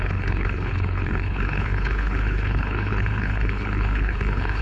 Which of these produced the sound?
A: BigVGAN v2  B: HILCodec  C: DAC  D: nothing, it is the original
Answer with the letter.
B